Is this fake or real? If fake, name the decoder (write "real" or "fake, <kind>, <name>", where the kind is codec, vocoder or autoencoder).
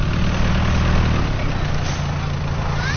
real